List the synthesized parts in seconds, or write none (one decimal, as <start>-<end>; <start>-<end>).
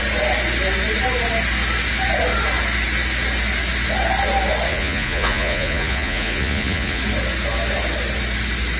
4.7-7.0